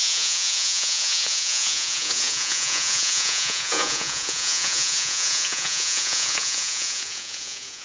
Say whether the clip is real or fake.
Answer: fake